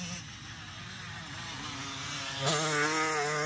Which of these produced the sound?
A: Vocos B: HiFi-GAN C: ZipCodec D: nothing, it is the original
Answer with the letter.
D